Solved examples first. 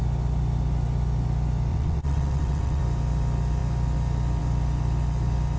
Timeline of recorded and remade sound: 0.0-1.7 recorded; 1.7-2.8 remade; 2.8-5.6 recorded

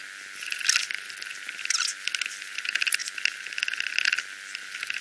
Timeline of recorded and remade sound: 0.0-5.0 recorded

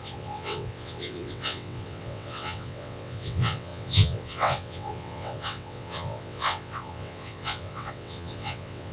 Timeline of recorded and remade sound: 0.0-8.9 remade

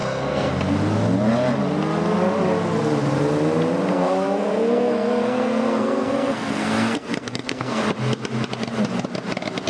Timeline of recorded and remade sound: 0.0-0.5 remade; 0.5-3.9 recorded; 3.9-7.8 remade; 7.8-9.7 recorded